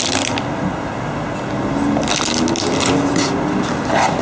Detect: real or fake real